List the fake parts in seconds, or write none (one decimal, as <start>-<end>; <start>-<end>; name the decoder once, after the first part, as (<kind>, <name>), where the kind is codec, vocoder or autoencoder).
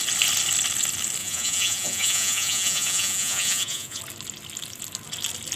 1.2-4.0 (vocoder, Vocos)